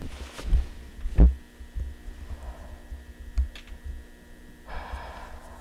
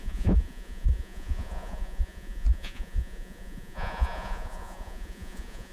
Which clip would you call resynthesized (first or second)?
second